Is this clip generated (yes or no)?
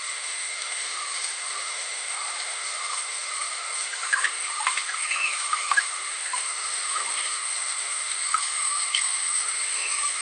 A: yes